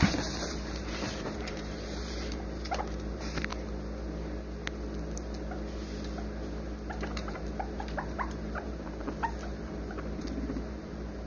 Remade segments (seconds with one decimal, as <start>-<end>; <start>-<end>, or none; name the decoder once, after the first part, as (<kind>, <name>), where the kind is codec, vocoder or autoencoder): 0.0-3.5 (vocoder, BigVGAN v2); 6.9-11.3

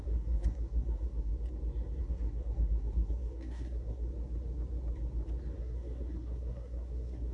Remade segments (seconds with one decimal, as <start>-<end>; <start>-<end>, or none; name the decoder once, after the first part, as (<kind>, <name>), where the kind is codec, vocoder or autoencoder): 0.0-1.3 (codec, SNAC); 2.0-4.1; 5.6-7.3